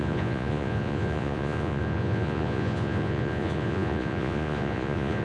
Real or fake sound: fake